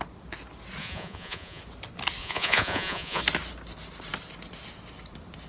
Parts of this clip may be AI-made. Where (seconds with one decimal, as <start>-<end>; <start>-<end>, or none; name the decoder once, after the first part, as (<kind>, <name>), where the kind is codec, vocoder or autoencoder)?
0.8-1.6 (vocoder, Vocos); 2.2-3.2